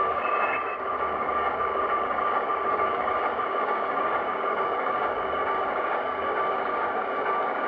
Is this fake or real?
fake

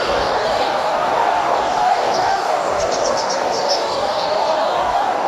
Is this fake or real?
fake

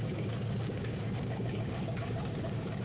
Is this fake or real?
fake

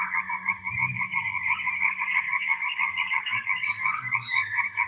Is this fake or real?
fake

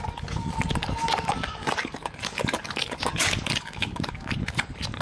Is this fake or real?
fake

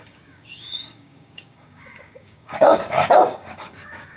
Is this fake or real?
fake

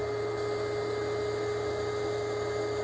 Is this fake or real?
real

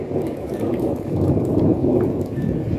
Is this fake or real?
fake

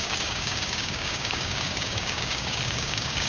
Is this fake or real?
fake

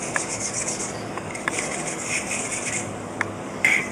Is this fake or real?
fake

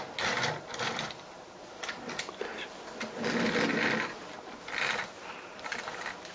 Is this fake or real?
real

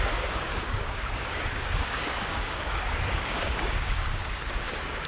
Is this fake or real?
fake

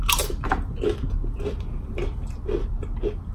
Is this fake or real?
real